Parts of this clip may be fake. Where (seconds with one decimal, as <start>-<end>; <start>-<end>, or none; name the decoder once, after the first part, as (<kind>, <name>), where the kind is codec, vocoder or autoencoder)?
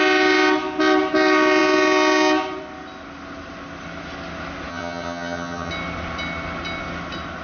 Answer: 4.7-5.7 (vocoder, HiFi-GAN)